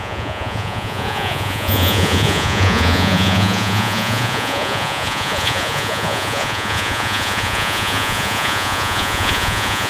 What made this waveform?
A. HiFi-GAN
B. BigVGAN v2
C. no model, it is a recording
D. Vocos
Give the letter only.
D